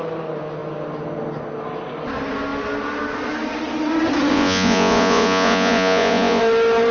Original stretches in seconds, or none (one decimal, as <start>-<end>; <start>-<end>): 0.0-4.3; 6.4-6.9